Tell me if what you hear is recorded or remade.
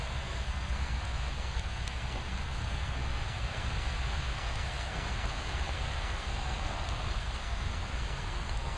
remade